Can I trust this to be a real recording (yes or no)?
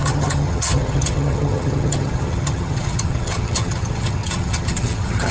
no